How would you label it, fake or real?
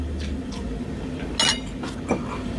real